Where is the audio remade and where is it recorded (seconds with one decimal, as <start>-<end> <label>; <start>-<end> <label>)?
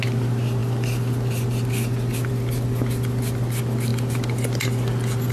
0.0-5.3 recorded